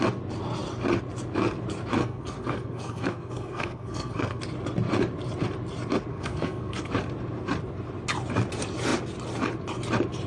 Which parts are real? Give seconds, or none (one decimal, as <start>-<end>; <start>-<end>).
0.0-2.0; 4.4-6.1; 6.9-10.3